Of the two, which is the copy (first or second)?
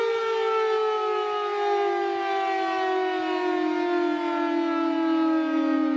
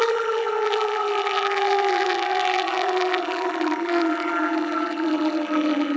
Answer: second